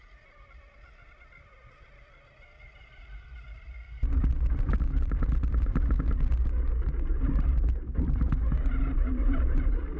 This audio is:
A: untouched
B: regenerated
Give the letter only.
A